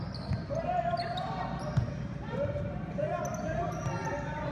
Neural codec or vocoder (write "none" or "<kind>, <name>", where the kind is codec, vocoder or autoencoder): none